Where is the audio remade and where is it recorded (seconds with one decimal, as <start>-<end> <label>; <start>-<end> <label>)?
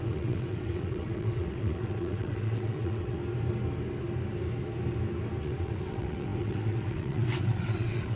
0.0-3.2 remade; 3.2-5.4 recorded; 5.4-8.2 remade